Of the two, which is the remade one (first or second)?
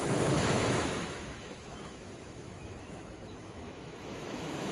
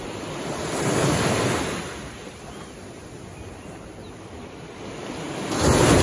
first